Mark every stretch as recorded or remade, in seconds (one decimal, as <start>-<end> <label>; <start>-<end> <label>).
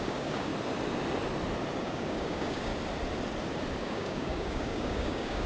0.0-0.5 remade; 0.5-1.8 recorded; 1.8-2.7 remade; 2.7-3.8 recorded; 3.8-5.5 remade